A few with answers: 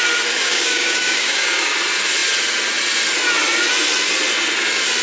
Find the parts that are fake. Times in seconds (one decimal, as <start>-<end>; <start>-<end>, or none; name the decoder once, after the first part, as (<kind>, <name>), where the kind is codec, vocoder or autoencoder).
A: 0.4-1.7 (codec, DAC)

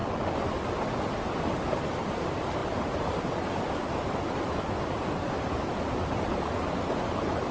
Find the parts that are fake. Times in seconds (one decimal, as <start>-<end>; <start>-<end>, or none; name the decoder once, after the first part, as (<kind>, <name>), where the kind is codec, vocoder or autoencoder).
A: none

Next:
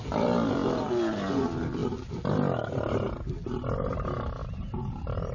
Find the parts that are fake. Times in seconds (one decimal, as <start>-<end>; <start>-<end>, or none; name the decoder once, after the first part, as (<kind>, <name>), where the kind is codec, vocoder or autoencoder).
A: none